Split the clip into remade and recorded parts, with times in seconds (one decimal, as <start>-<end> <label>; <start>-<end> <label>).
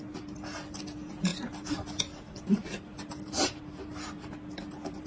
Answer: 0.0-5.1 recorded